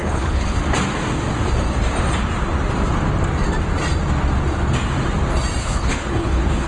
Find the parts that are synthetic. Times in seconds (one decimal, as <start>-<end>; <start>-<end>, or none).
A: 0.0-0.6; 5.6-6.7